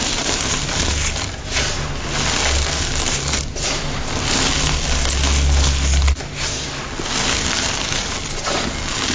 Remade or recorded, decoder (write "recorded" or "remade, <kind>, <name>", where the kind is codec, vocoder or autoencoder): recorded